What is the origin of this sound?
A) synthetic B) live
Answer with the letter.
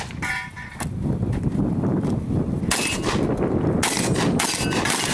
B